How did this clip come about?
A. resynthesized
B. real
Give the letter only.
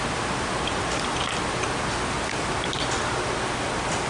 A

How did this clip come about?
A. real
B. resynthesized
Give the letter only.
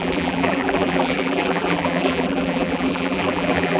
B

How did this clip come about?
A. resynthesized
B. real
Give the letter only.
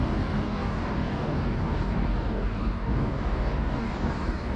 A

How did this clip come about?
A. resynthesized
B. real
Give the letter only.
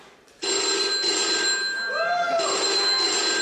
B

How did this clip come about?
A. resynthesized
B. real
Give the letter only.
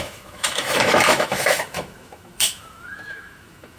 A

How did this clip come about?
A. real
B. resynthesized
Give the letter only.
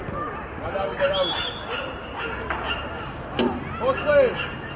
A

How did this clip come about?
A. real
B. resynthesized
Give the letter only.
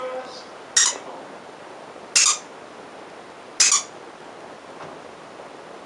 A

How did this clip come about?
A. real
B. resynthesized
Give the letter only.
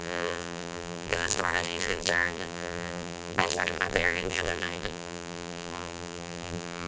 B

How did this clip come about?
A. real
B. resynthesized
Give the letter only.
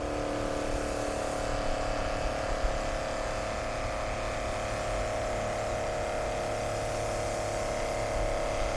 A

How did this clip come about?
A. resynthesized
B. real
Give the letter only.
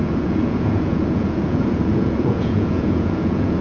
A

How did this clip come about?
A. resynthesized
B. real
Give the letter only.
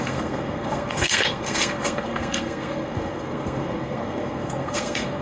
A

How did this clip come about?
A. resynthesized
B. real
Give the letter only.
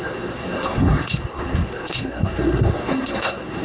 A